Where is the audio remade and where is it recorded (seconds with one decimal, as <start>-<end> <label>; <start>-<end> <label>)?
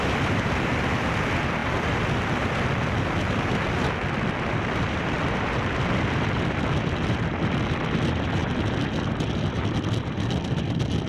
0.0-11.1 recorded